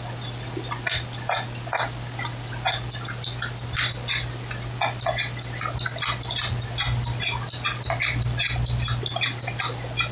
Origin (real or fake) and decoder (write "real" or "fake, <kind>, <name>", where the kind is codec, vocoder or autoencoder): real